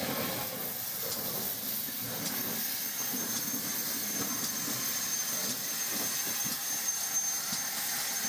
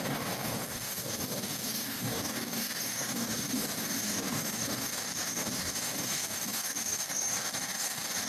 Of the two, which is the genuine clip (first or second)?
first